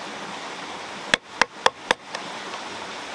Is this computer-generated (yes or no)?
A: no